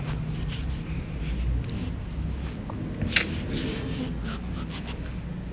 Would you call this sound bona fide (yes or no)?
yes